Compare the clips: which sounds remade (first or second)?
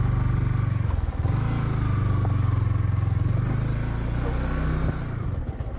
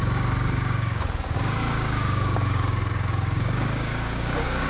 second